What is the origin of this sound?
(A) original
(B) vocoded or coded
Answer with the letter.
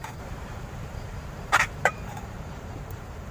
B